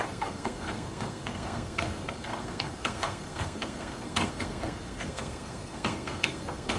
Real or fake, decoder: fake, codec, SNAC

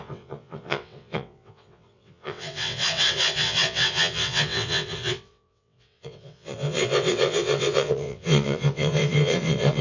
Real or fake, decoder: fake, vocoder, WaveNeXt